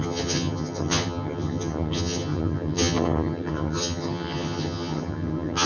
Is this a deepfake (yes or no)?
yes